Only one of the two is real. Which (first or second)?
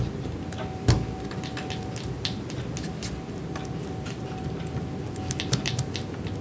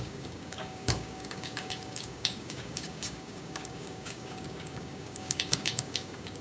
first